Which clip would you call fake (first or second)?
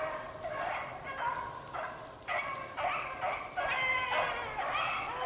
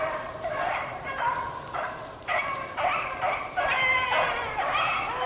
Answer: second